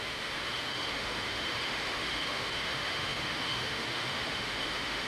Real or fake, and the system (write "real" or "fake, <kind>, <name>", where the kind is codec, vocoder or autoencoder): fake, autoencoder, DAC-VAE